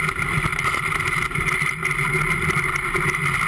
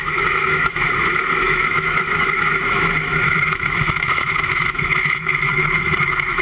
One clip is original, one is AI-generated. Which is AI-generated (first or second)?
second